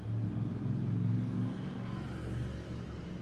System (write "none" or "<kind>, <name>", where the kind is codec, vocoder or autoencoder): none